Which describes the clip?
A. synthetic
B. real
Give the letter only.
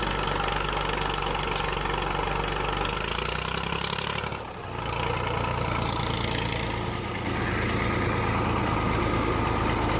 B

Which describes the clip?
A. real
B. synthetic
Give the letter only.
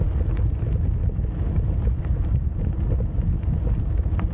A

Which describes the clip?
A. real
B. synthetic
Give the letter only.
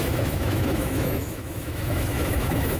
B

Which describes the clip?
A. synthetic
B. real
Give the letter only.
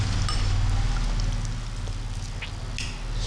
B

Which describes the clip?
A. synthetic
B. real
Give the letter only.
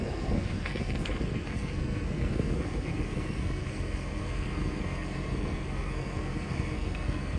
A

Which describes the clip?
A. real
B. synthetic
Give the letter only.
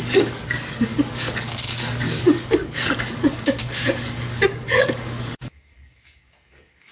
B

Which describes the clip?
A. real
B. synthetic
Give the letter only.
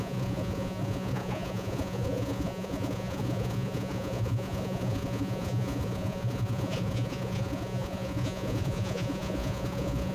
B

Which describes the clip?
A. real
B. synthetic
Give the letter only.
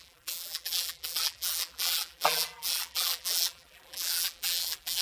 B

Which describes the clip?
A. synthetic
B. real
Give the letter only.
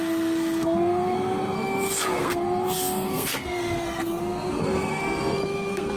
A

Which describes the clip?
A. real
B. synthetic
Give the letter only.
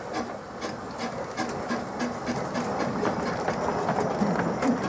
A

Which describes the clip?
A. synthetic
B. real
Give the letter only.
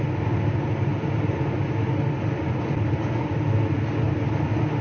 B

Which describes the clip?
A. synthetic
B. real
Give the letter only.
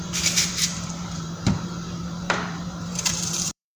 A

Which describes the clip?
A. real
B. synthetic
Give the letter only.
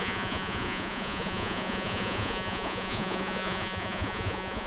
B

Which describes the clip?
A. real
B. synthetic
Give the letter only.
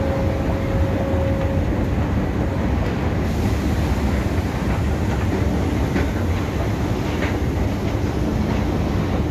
A